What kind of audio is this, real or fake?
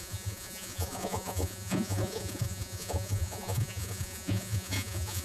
fake